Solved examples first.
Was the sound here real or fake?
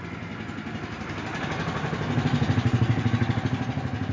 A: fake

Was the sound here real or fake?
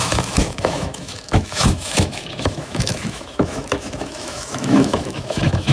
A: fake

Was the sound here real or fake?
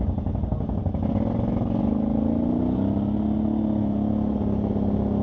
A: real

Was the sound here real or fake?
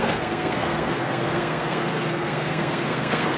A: fake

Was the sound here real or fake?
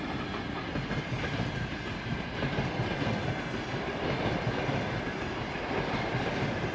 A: real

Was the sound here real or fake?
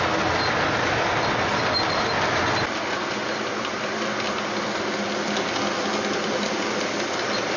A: real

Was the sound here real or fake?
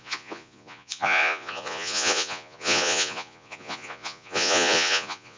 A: fake